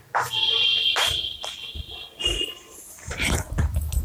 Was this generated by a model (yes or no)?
no